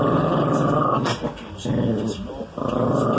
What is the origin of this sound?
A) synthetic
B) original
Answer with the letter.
B